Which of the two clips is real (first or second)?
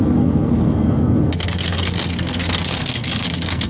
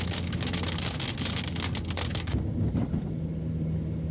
second